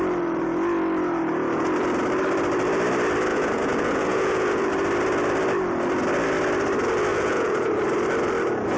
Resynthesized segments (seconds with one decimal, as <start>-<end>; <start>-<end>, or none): 3.3-4.7; 7.1-7.7